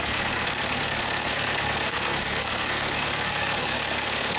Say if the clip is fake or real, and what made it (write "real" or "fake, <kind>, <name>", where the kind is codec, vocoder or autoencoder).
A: fake, codec, SNAC